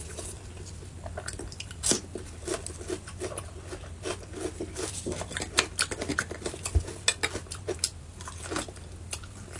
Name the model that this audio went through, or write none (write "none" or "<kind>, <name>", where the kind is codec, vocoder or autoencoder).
none